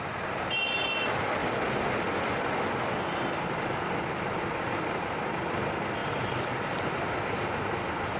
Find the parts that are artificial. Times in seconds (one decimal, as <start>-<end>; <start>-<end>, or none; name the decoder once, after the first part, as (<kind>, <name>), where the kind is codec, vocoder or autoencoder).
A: 1.4-2.4 (vocoder, BigVGAN v2); 6.0-7.5